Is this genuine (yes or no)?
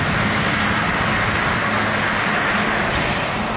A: yes